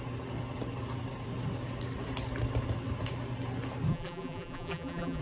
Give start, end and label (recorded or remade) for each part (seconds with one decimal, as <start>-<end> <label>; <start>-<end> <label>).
0.0-3.9 recorded; 3.9-5.2 remade